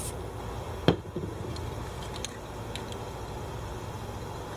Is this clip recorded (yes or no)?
yes